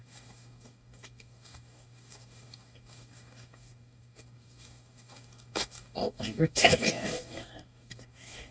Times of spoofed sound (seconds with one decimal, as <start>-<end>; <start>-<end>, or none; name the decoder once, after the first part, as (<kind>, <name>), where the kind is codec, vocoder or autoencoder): 0.0-8.5 (codec, DAC)